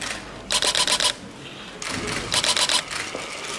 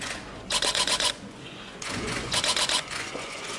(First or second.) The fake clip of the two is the second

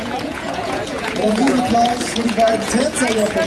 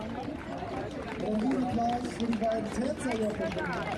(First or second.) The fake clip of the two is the first